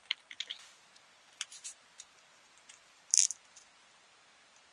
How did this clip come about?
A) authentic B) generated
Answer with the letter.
B